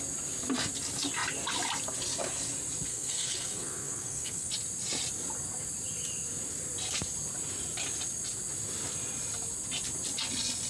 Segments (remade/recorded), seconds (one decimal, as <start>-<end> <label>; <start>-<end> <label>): 0.0-2.9 recorded; 2.9-4.5 remade; 4.5-10.7 recorded